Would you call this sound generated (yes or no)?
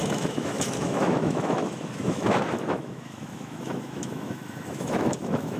yes